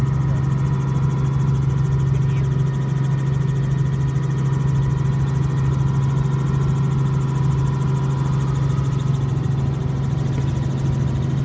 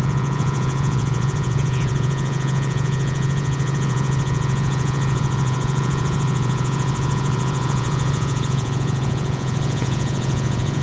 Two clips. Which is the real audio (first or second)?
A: first